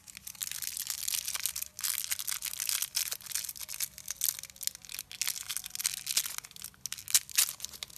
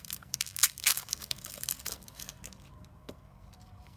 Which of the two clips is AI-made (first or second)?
second